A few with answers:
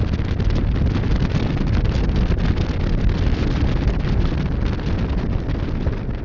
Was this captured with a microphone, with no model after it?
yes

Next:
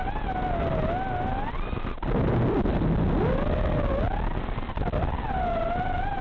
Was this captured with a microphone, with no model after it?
yes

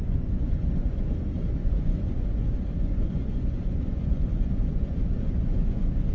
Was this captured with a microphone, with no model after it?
no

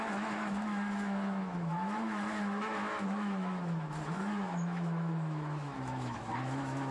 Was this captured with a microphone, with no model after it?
no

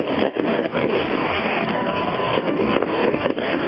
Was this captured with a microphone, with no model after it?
no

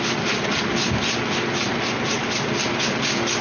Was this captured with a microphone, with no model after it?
yes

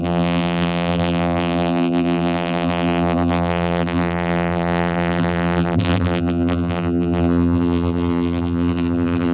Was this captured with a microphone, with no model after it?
no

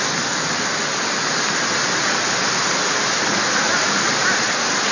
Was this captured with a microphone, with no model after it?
yes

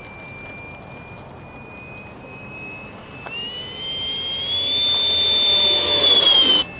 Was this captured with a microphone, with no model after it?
yes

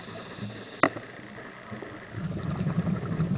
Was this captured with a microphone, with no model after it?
yes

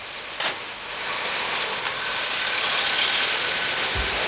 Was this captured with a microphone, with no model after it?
yes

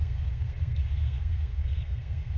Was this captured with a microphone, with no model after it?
no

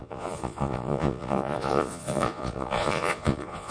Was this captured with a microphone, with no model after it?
no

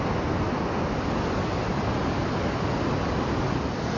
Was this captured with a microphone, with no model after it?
yes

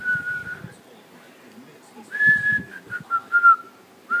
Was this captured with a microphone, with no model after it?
yes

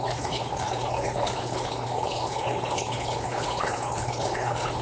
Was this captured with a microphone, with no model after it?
no